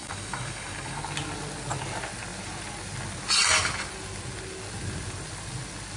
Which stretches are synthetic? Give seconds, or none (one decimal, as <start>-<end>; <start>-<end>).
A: 0.0-1.0